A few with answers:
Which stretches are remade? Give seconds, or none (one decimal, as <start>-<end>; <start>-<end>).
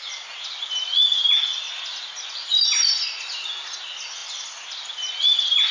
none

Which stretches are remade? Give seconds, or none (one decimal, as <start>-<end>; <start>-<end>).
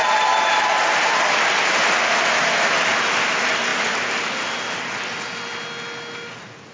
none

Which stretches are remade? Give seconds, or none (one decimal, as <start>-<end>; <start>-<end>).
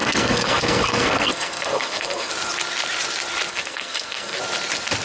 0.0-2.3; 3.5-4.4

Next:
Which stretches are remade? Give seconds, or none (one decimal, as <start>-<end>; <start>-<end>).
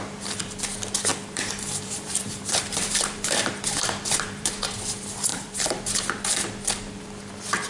1.1-4.5; 5.3-5.8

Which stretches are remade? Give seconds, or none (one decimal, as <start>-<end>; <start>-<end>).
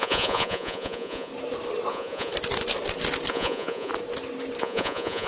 0.0-1.3; 1.9-2.3; 3.3-3.9; 4.6-5.3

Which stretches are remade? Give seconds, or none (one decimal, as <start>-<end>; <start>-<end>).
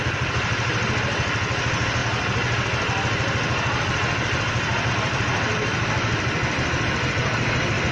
0.0-2.0; 4.9-7.9